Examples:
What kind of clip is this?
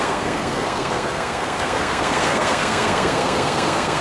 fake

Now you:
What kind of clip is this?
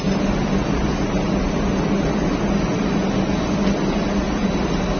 real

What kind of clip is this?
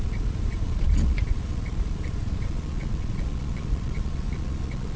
fake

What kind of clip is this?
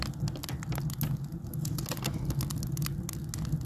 real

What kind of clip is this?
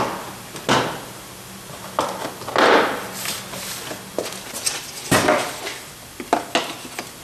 real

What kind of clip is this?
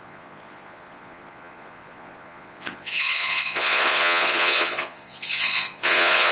fake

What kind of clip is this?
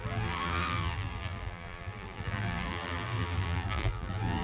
fake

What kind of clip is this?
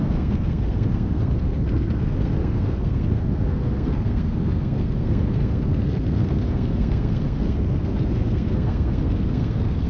fake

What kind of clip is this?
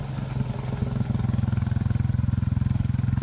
real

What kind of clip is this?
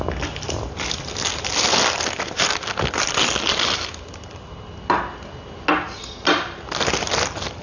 real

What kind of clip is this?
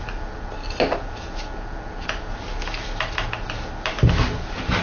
real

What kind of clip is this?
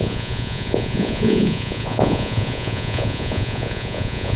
fake